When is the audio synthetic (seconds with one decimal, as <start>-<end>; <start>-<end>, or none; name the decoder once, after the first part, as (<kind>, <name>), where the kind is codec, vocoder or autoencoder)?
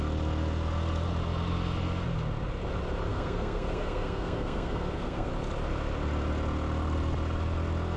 3.1-5.3 (codec, SNAC)